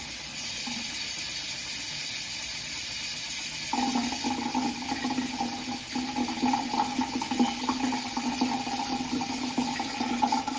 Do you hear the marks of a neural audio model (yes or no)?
no